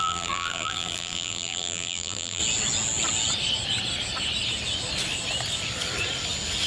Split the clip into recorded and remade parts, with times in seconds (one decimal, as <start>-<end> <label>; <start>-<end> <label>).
0.0-2.4 remade; 2.4-6.7 recorded